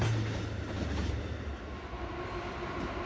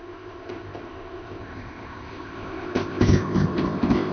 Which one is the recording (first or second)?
first